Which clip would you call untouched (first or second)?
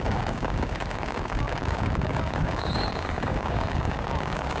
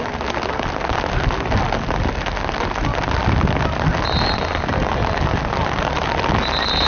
second